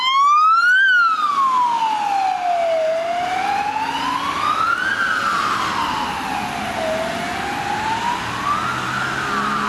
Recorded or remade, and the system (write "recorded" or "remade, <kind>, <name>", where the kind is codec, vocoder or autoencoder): recorded